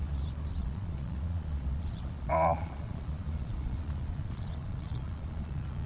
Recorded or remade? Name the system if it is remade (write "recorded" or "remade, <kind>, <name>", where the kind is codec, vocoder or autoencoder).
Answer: remade, vocoder, Vocos